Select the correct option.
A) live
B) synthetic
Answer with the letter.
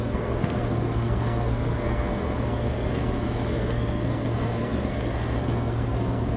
B